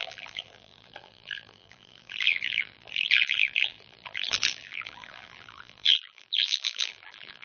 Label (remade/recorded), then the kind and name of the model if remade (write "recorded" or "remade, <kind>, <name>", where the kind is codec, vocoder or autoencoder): remade, vocoder, BigVGAN v2